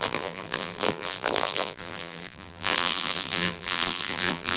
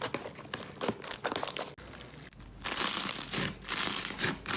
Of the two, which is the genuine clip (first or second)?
second